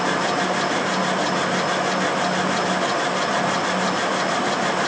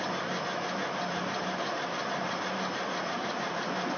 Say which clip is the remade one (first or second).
second